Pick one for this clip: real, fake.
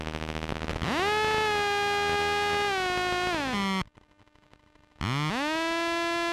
real